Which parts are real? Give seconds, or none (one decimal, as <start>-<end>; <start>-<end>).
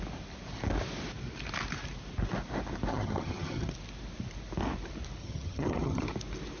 0.0-2.9; 3.7-5.2; 6.0-6.6